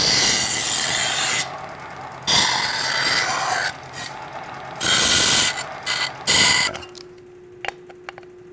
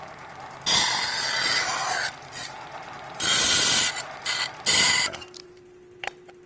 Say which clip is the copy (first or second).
second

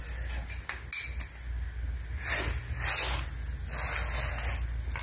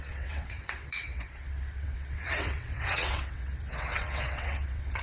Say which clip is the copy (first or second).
second